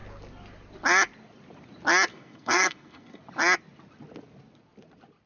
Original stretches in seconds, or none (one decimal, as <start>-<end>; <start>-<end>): 0.0-2.1; 3.2-5.3